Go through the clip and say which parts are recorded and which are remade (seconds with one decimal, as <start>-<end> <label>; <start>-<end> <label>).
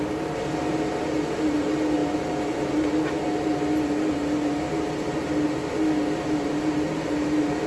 0.0-7.7 recorded